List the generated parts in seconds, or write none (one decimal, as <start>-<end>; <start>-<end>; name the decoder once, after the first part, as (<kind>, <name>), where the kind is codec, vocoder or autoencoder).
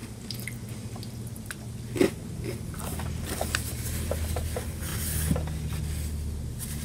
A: none